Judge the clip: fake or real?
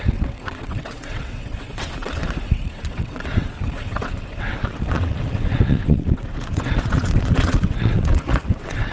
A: fake